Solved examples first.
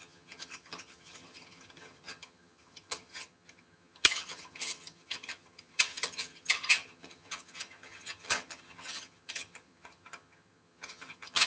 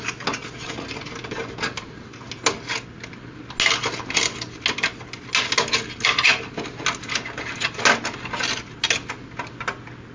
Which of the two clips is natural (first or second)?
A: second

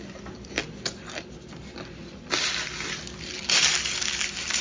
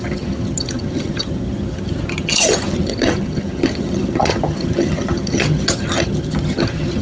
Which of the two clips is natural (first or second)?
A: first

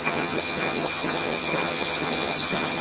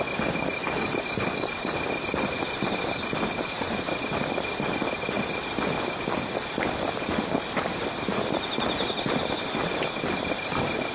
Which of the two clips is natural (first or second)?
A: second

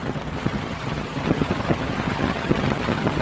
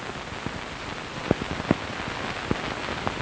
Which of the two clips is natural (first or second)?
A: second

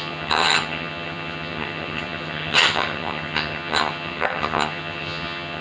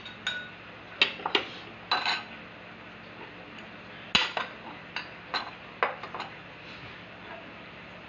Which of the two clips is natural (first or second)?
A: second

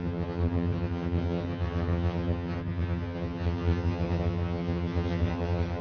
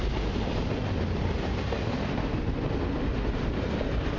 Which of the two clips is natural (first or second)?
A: second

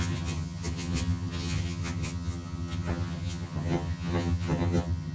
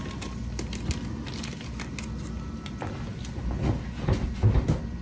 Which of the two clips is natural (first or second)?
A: second